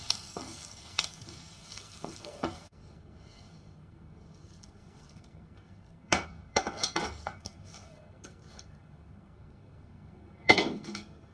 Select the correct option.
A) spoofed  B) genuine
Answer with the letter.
A